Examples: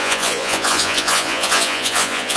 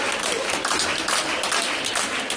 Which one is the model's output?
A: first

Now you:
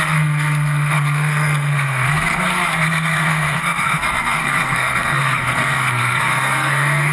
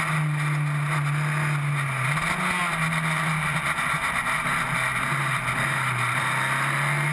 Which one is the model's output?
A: first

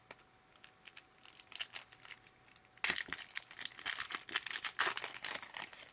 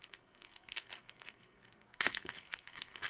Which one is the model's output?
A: second